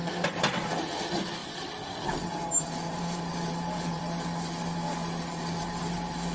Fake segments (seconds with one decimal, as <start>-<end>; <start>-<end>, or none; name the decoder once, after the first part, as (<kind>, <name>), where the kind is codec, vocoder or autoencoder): 0.0-1.4 (vocoder, BigVGAN v2); 2.6-4.0; 5.6-6.3